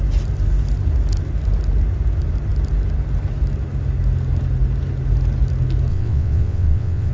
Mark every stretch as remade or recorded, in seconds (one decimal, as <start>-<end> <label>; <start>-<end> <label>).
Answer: 0.0-5.9 recorded; 5.9-7.1 remade